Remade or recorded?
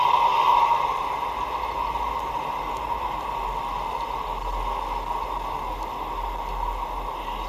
recorded